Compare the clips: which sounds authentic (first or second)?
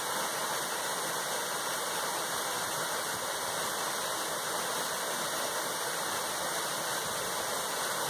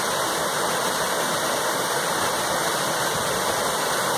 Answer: first